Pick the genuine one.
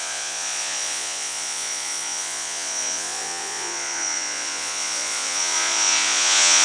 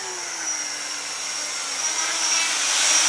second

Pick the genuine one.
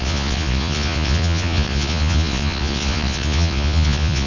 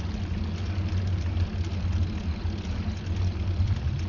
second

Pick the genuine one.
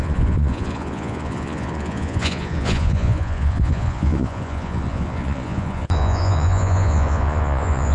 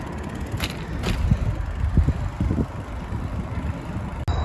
second